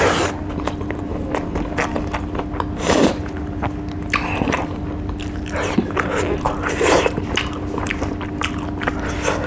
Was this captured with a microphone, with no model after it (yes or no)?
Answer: yes